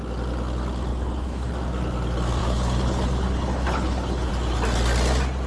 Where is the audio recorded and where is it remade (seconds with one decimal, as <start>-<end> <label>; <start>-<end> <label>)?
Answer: 0.0-0.9 recorded; 0.9-1.5 remade; 1.5-2.4 recorded; 2.4-4.3 remade; 4.3-5.5 recorded